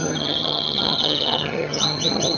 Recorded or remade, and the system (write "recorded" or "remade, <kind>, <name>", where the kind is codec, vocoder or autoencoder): remade, vocoder, HiFi-GAN